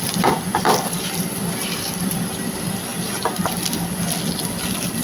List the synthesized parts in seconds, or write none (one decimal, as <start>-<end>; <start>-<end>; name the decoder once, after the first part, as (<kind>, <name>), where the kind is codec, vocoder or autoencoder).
0.5-2.0 (vocoder, BigVGAN v2); 2.9-4.1